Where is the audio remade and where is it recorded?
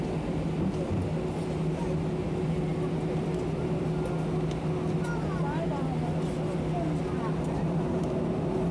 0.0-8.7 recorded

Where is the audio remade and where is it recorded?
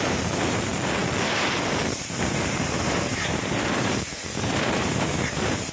0.0-0.7 remade; 0.7-2.2 recorded; 2.2-5.7 remade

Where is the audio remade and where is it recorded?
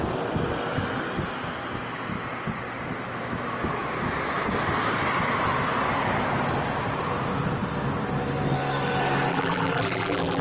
0.0-9.3 recorded; 9.3-10.4 remade